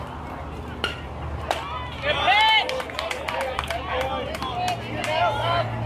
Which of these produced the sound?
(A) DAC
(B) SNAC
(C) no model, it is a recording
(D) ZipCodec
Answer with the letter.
C